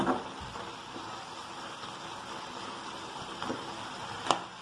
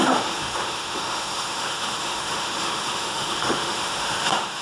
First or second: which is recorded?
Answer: first